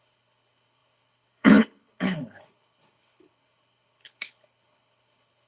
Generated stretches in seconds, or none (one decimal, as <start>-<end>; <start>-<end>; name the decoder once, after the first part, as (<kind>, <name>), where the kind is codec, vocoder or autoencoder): 0.0-5.5 (codec, HILCodec)